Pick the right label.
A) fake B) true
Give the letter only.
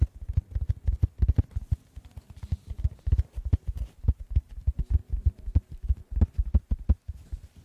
B